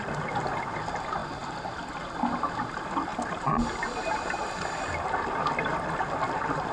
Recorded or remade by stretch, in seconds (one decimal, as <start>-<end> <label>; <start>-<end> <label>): 0.0-6.7 recorded